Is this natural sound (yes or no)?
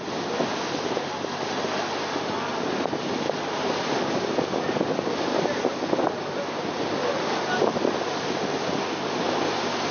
yes